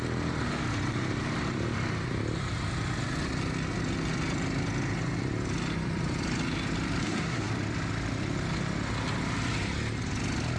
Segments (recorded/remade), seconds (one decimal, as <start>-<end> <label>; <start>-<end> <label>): 0.0-7.0 recorded; 7.0-7.5 remade; 7.5-10.6 recorded